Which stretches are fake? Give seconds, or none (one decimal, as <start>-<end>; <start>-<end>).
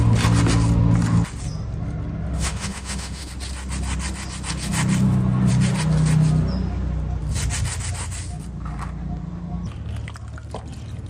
2.3-3.3